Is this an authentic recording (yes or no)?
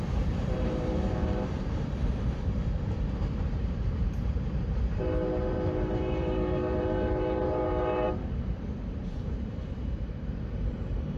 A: no